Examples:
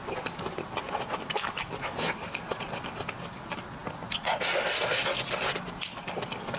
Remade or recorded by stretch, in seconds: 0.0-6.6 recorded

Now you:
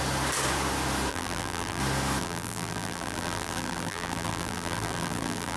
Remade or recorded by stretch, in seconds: 0.0-1.1 recorded; 1.1-1.8 remade; 1.8-2.2 recorded; 2.2-5.6 remade

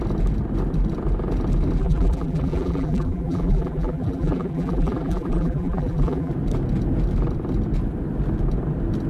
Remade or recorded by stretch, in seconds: 0.0-1.8 recorded; 1.8-6.3 remade; 6.3-9.1 recorded